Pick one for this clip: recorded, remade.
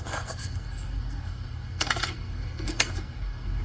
remade